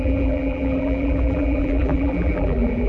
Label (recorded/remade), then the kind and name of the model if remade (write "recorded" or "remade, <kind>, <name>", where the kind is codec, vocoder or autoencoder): remade, vocoder, BigVGAN v2